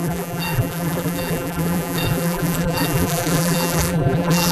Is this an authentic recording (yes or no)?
no